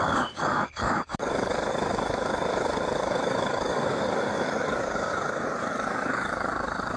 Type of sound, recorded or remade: remade